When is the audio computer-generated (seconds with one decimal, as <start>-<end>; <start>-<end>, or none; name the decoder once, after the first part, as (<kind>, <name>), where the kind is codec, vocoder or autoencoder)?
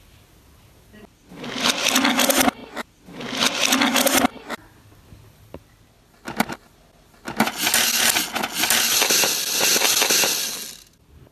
none